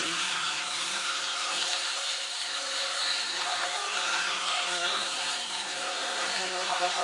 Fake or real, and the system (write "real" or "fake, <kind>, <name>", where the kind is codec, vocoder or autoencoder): fake, codec, SNAC